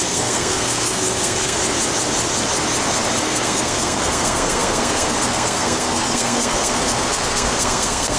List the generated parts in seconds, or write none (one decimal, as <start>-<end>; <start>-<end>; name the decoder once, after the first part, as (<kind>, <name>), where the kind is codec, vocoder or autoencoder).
0.0-1.6 (codec, SNAC); 3.2-8.2